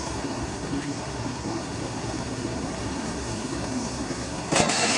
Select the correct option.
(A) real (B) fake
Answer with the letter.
B